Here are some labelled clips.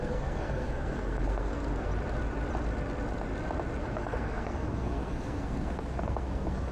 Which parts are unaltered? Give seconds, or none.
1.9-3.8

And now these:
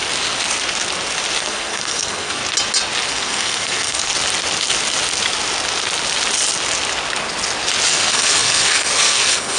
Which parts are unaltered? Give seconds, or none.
0.0-1.4; 2.4-3.1; 4.1-7.9

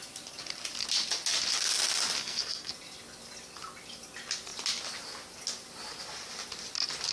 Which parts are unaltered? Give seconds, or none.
0.0-2.2; 2.7-7.1